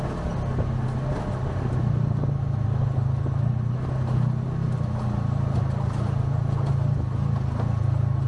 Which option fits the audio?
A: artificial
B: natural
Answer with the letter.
B